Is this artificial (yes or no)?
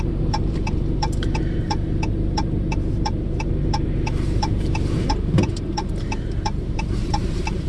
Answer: yes